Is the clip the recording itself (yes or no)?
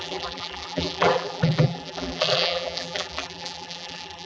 no